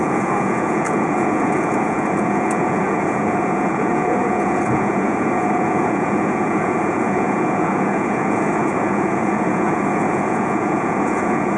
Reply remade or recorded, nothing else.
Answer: remade